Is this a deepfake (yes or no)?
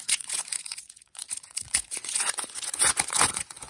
yes